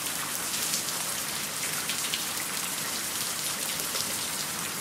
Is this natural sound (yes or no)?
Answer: yes